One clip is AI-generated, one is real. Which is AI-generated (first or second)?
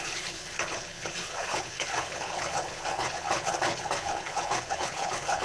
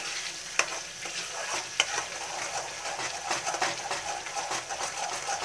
first